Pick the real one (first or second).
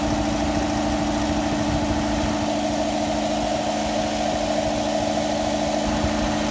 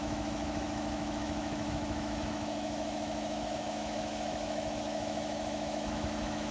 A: first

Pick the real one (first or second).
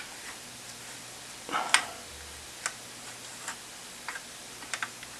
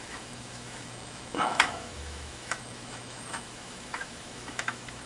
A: first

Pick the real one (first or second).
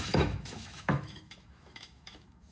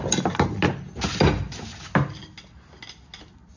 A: second